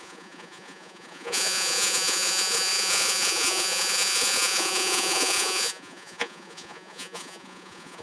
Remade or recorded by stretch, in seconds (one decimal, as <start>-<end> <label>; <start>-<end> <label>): 0.0-8.0 remade